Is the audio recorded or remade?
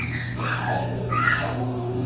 remade